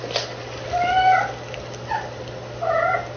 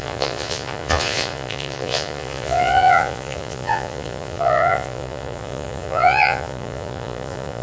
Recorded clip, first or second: first